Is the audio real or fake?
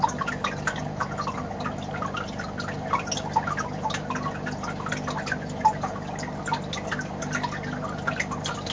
real